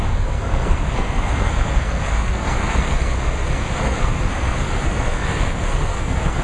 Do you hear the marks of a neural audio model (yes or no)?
yes